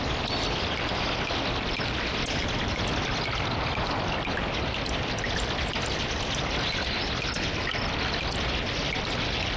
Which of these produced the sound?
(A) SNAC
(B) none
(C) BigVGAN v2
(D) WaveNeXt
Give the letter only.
B